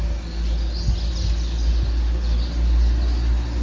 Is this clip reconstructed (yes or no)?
no